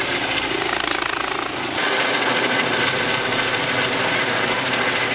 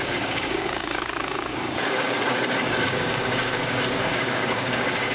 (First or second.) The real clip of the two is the first